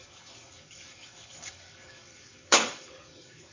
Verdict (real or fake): fake